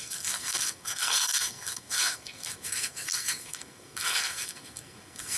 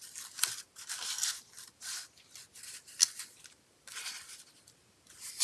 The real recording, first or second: second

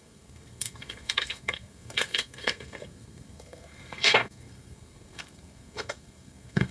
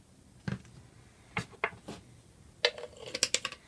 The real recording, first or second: second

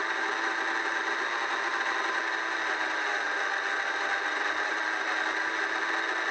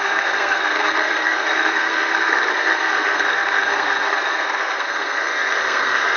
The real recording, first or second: first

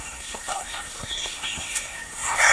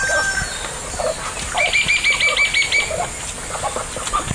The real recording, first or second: second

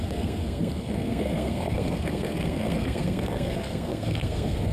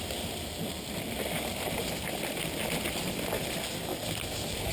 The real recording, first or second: second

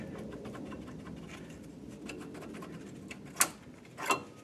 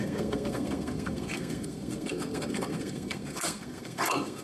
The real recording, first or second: first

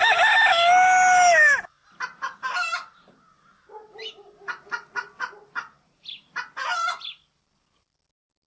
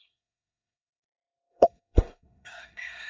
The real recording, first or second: first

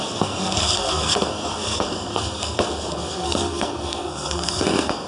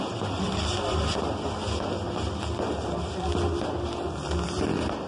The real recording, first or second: second